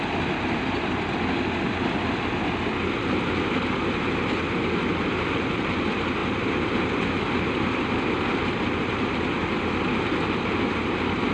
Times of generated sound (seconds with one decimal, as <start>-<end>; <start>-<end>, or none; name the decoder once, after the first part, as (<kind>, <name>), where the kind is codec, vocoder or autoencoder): none